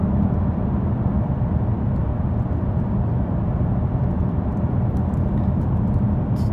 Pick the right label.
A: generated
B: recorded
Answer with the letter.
B